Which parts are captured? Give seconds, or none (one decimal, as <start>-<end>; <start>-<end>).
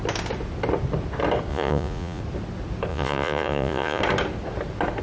0.0-1.5; 2.2-2.9; 4.0-5.0